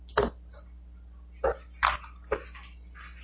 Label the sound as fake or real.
real